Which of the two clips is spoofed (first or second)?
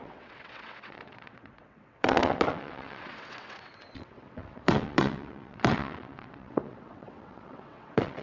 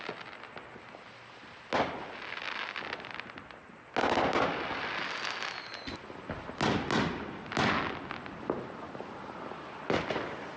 first